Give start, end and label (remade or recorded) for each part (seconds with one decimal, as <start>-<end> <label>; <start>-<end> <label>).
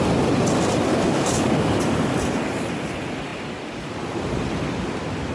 0.0-0.9 recorded; 0.9-1.8 remade; 1.8-5.3 recorded